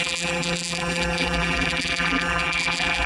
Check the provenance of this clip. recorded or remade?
remade